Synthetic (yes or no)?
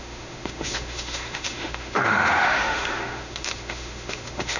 yes